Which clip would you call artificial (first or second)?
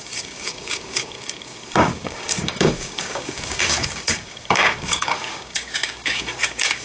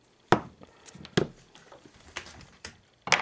first